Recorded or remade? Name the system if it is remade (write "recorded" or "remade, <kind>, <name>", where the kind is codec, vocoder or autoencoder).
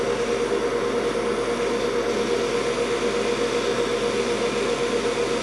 recorded